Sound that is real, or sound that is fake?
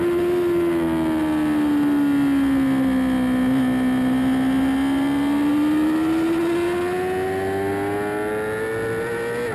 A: real